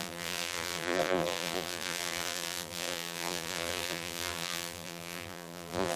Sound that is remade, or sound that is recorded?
remade